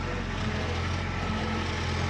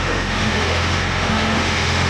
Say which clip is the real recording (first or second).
first